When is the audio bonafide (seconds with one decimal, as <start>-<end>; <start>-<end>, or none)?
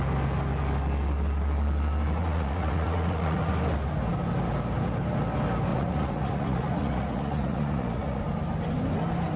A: 0.0-2.2; 3.5-5.7; 8.2-9.4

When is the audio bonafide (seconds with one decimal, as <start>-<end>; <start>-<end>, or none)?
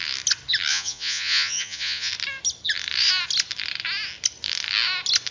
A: 0.0-0.7; 2.1-5.3